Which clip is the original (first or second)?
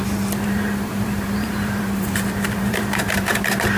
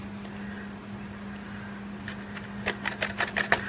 second